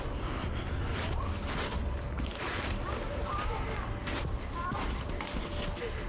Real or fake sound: real